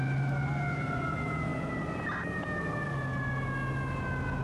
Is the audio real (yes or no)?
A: yes